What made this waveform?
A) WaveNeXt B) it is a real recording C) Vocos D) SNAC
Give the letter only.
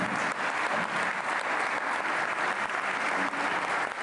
B